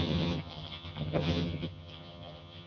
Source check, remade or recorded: remade